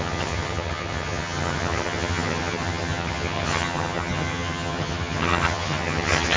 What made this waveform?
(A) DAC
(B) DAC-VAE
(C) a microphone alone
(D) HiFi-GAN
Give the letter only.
D